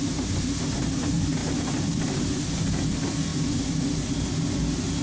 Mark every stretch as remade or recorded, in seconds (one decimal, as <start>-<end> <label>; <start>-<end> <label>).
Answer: 0.0-5.0 recorded